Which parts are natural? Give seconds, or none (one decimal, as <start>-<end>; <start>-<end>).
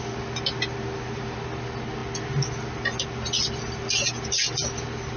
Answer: 0.0-5.2